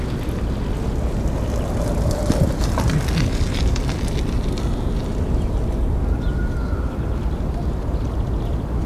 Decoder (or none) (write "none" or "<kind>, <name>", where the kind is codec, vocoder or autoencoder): none